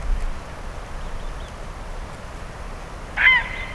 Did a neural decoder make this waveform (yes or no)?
no